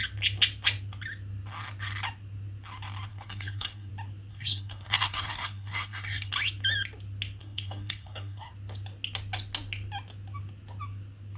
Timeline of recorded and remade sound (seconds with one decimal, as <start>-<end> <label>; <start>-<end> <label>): 0.0-3.1 recorded; 3.1-3.9 remade; 3.9-4.3 recorded; 4.3-6.3 remade; 6.3-7.4 recorded; 7.4-8.5 remade; 8.5-11.4 recorded